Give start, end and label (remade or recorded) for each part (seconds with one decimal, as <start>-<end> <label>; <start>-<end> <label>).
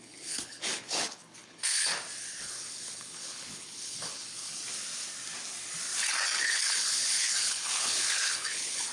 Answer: 0.0-1.9 remade; 1.9-2.4 recorded; 2.4-4.6 remade; 4.6-6.4 recorded; 6.4-8.9 remade